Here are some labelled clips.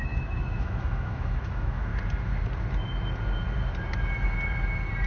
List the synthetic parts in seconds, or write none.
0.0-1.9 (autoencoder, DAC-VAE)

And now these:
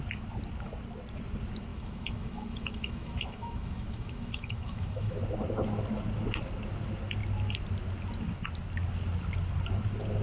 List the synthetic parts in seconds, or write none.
1.7-5.2 (autoencoder, DAC-VAE)

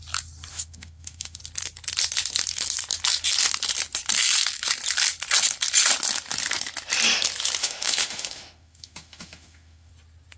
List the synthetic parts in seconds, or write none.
0.5-1.4 (autoencoder, DAC-VAE); 7.6-9.9

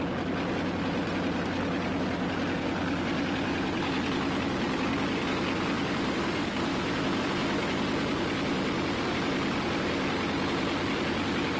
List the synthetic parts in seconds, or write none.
6.7-7.2 (autoencoder, DAC-VAE)